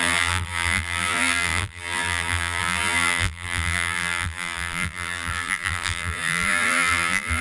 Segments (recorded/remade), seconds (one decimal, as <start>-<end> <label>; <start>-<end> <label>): 0.0-7.4 remade